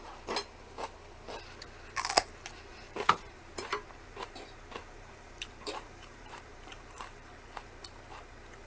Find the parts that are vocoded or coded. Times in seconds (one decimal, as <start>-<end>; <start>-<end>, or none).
2.7-7.3